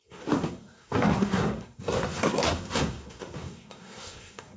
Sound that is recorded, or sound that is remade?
remade